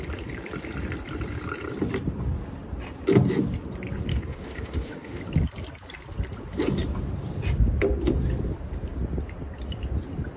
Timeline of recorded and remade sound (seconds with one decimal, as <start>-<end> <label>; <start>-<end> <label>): 0.0-4.1 recorded; 4.1-5.2 remade; 5.2-10.4 recorded